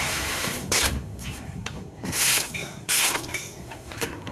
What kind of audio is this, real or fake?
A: fake